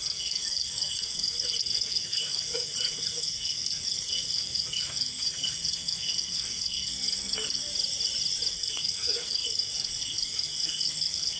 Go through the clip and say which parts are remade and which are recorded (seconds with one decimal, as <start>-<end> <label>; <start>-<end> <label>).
0.0-7.7 remade; 7.7-8.5 recorded; 8.5-11.4 remade